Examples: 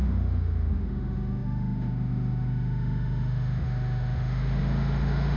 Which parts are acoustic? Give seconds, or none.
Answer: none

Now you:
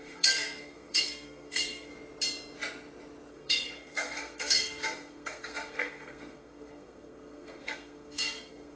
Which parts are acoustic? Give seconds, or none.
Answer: 1.9-3.3

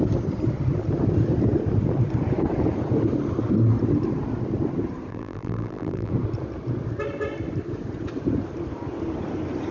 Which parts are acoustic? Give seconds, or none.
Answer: 0.0-5.1; 6.1-9.7

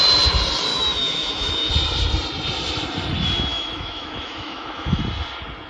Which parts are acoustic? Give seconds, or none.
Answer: 0.0-0.7; 1.7-3.5; 5.0-5.7